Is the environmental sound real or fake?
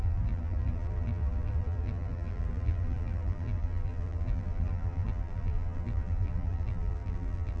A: fake